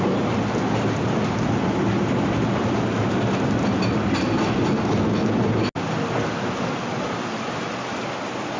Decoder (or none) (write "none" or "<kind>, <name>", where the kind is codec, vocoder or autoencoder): none